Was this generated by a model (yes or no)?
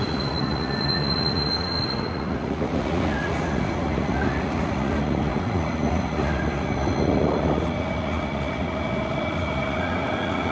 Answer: yes